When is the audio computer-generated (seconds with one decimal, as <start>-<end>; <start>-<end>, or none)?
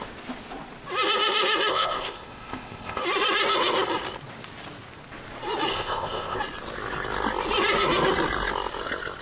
1.7-3.0; 5.7-6.4